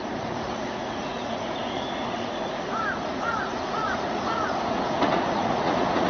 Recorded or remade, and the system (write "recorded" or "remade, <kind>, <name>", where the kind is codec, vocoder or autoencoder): remade, vocoder, Vocos